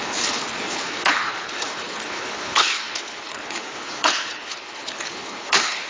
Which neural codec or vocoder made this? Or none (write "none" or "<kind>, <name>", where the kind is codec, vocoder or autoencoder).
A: codec, HILCodec